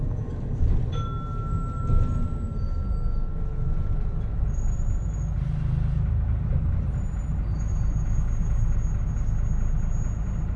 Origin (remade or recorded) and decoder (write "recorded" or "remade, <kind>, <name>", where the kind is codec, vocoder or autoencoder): recorded